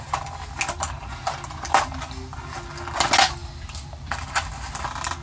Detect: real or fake real